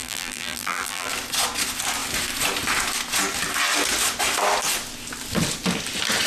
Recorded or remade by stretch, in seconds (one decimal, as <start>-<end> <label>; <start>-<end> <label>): 0.0-1.1 remade; 1.1-6.3 recorded